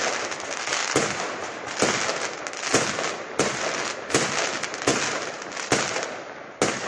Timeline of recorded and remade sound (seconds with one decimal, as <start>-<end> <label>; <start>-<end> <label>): 0.0-6.9 recorded